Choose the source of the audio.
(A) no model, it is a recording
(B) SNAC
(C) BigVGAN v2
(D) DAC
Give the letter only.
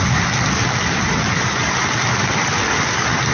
A